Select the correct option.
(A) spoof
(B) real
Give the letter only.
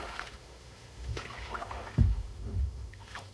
A